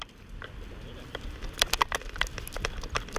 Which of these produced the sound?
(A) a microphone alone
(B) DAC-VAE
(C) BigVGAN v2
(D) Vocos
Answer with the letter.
A